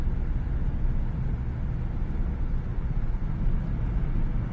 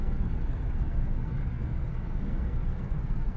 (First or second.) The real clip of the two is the first